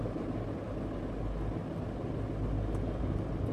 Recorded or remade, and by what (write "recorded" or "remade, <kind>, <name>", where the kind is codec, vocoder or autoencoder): recorded